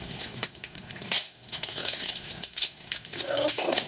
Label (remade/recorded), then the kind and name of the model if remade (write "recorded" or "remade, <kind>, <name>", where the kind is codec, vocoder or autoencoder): remade, codec, SNAC